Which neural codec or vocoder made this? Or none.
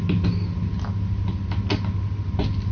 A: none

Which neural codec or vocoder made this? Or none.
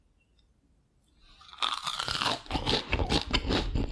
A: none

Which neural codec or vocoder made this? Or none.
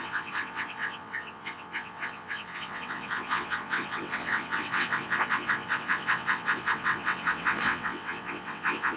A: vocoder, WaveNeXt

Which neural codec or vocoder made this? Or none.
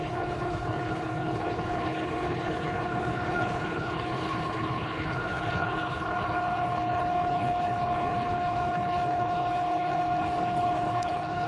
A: codec, HILCodec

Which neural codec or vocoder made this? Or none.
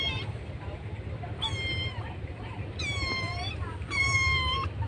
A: vocoder, BigVGAN v2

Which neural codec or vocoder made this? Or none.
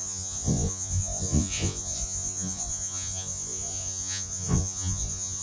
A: vocoder, Vocos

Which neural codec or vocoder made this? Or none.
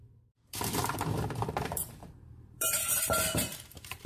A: vocoder, BigVGAN v2